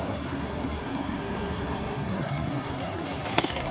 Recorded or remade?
remade